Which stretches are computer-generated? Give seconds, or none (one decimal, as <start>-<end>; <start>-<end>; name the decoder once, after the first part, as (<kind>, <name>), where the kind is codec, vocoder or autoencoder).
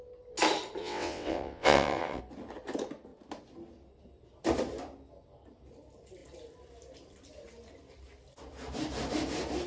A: 0.8-2.2 (vocoder, WaveNeXt)